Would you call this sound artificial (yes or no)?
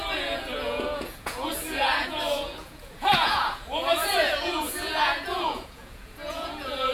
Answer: yes